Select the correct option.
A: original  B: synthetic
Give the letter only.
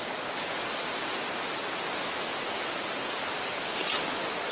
A